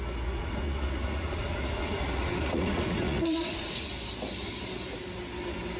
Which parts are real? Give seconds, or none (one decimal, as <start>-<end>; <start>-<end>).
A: 0.0-0.4; 3.9-5.8